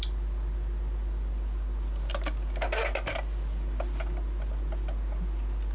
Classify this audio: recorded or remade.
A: recorded